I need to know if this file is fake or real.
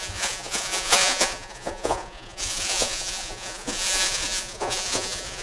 fake